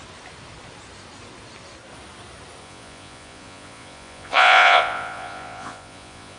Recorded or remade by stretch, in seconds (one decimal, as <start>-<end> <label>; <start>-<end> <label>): 0.0-2.6 recorded; 2.6-6.4 remade